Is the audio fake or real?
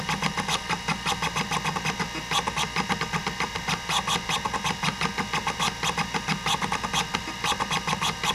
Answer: real